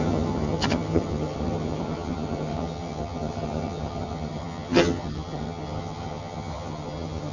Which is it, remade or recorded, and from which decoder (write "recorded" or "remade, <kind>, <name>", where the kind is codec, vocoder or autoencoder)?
remade, vocoder, HiFi-GAN